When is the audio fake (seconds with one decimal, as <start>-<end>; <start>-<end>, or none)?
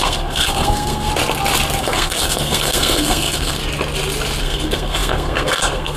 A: 0.0-1.1; 1.8-3.6; 4.4-6.0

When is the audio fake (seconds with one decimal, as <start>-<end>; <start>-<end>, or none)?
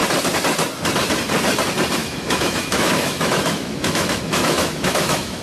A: 2.0-5.4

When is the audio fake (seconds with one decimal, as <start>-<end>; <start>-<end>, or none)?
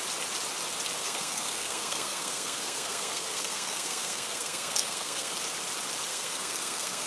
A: 1.0-5.3; 6.1-7.1